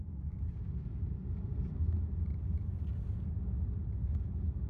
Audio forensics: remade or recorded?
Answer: recorded